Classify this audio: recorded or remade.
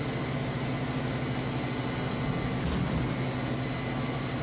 recorded